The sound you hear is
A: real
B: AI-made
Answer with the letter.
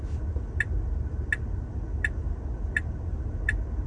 A